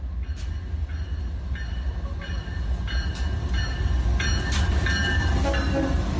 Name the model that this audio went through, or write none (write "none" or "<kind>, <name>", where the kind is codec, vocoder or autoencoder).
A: none